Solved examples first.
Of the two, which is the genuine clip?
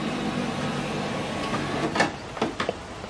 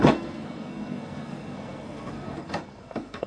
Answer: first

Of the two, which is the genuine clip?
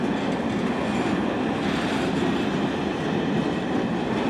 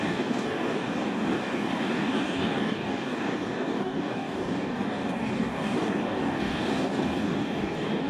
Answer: first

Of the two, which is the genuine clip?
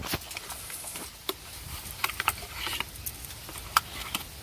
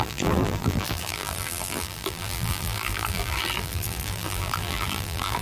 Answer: first